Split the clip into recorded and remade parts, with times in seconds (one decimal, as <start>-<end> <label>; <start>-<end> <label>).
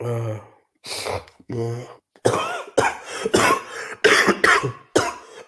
0.0-1.3 recorded; 1.3-2.0 remade; 2.0-5.5 recorded